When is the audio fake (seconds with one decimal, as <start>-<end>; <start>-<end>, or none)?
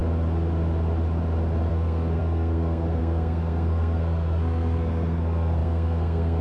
1.7-6.4